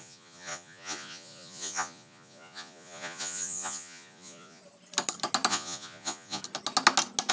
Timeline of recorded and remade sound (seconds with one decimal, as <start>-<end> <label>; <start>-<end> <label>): 0.0-4.6 remade; 4.6-5.5 recorded; 5.5-6.4 remade; 6.4-7.3 recorded